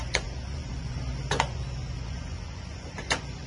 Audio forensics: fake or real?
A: fake